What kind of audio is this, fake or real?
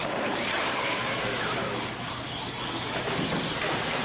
fake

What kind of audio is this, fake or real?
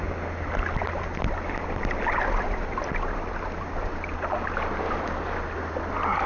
real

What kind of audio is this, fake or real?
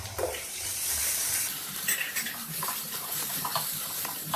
fake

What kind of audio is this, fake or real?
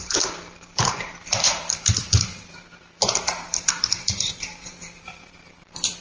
fake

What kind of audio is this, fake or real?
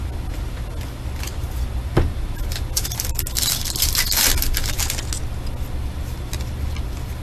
real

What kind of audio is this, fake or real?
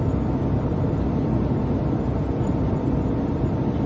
real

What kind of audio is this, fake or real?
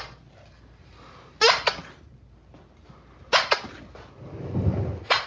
real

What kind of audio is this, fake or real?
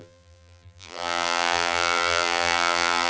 fake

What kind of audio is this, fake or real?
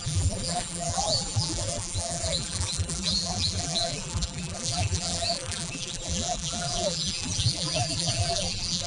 fake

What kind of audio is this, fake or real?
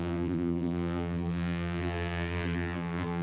fake